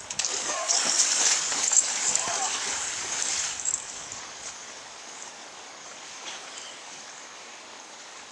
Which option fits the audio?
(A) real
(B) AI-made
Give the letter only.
B